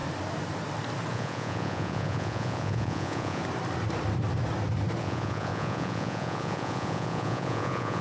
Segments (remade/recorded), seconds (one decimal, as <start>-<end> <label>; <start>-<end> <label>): 0.0-1.1 recorded; 1.1-3.4 remade; 3.4-5.0 recorded; 5.0-8.0 remade